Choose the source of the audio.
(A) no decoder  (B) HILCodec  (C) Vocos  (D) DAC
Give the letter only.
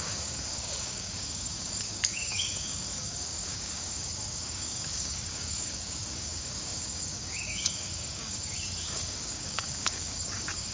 D